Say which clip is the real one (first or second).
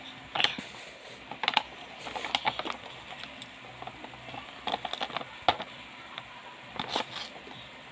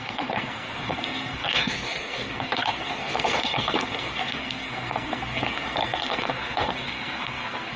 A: first